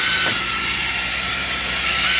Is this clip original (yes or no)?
yes